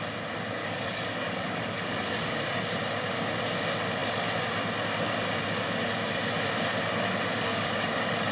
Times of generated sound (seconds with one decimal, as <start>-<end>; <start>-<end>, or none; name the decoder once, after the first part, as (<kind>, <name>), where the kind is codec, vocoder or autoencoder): 0.6-2.6 (codec, DAC); 7.5-8.3